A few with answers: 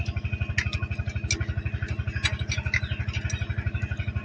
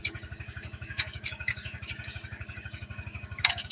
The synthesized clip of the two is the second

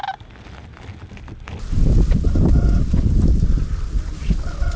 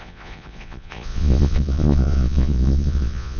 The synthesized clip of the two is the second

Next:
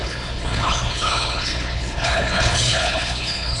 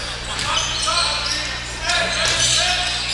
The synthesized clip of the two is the first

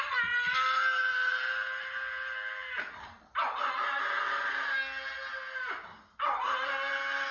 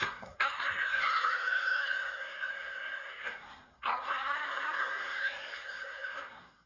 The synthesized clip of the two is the second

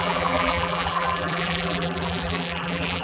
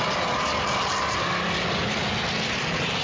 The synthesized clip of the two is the first